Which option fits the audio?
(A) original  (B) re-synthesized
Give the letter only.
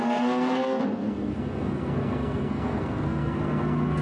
B